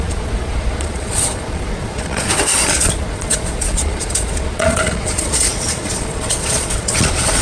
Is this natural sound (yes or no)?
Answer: no